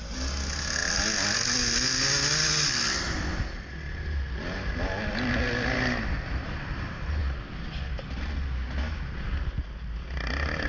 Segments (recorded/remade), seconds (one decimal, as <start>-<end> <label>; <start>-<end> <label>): 0.0-10.7 recorded